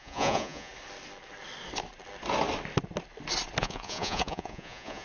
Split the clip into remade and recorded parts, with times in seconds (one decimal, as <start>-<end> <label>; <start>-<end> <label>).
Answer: 0.0-0.7 remade; 0.7-3.6 recorded; 3.6-5.0 remade